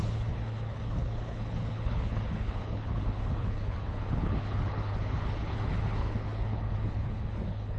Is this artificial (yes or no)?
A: yes